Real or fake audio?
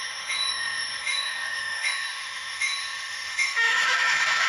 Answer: fake